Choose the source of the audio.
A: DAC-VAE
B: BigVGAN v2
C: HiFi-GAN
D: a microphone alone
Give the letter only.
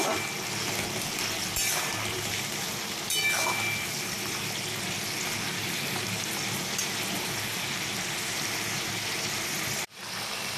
D